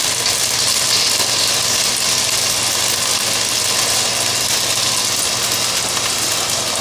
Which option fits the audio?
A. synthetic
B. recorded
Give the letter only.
B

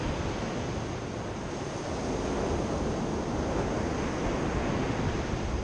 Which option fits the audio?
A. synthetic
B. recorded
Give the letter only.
B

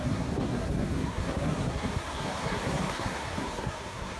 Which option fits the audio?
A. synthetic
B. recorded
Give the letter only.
A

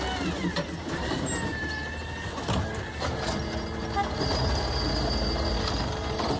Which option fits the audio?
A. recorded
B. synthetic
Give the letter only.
A